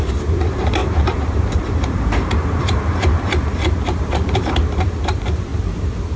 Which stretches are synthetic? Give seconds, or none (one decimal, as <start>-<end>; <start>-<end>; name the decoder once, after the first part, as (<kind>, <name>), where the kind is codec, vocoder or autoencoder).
0.0-5.5 (vocoder, BigVGAN v2)